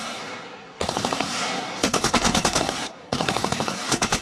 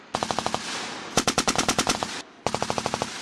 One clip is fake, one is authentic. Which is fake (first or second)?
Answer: first